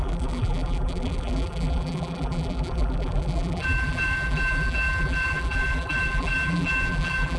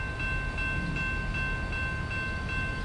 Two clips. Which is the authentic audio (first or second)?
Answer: second